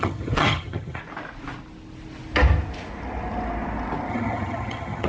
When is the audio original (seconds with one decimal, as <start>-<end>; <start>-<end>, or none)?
1.0-4.1